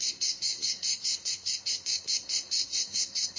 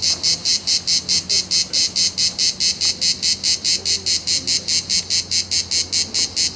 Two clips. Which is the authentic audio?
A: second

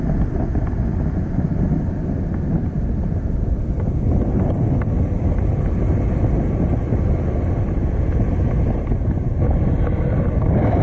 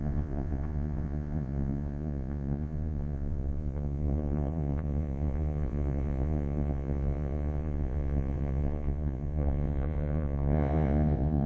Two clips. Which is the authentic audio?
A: first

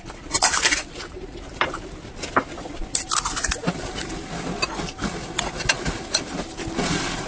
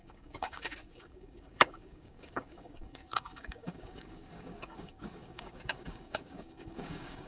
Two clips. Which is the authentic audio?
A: first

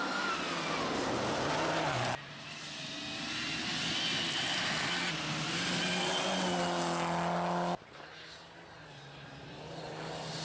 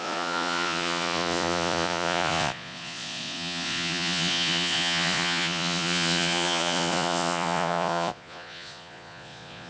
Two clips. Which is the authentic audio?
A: first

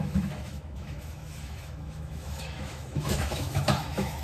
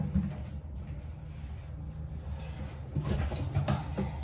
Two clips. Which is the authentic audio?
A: second